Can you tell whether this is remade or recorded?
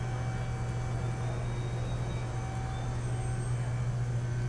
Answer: recorded